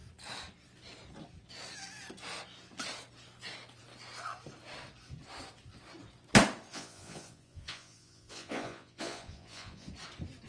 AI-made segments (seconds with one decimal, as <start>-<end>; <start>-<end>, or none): 6.7-9.9